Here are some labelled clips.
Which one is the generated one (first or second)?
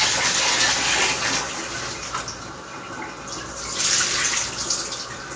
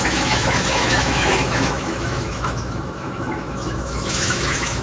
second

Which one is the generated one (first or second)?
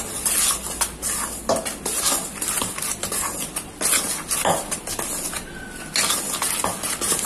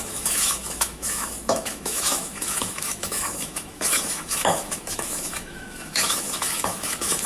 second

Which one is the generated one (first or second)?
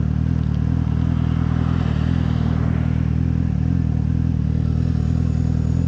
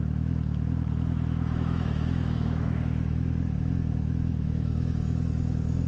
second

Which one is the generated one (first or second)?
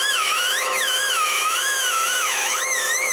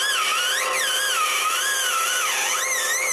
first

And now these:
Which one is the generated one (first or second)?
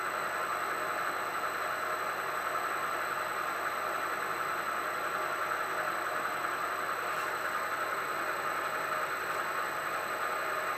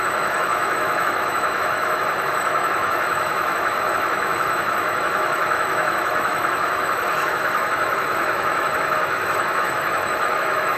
second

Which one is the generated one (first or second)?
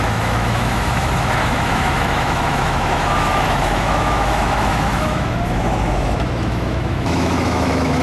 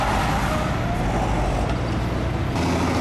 first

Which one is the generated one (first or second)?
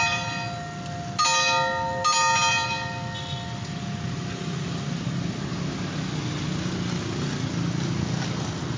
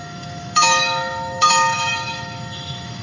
second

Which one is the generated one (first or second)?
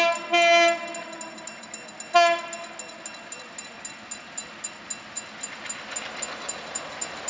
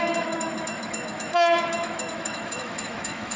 second